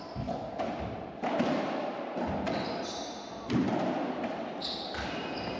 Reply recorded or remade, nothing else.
recorded